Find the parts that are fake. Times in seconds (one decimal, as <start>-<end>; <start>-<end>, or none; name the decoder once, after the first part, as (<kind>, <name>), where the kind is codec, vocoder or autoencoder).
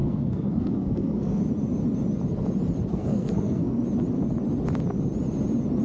0.0-1.4 (codec, SNAC); 2.9-3.8